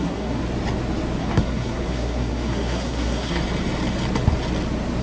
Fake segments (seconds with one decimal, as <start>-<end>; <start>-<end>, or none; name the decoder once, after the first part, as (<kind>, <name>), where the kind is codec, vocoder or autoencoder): 0.0-0.4 (codec, SNAC); 1.2-3.4